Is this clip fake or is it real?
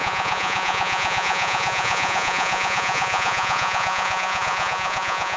fake